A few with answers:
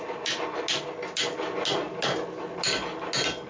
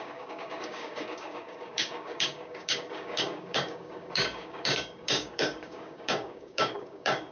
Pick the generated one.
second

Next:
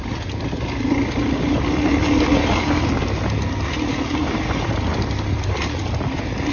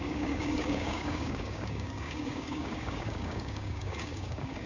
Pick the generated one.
second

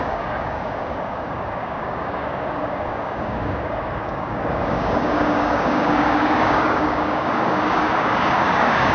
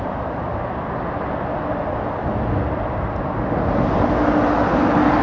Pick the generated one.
first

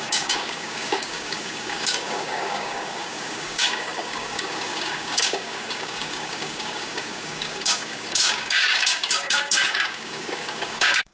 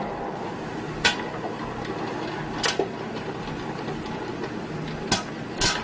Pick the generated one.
first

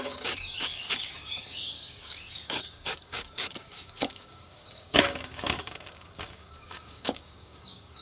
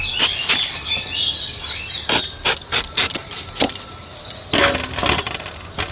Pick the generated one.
first